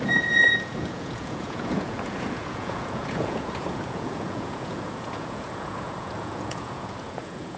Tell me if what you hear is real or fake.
fake